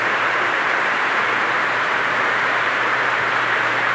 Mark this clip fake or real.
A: fake